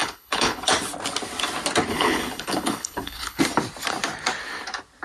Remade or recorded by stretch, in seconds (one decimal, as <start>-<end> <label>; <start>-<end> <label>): 0.0-0.7 remade; 0.7-1.9 recorded; 1.9-3.4 remade; 3.4-5.0 recorded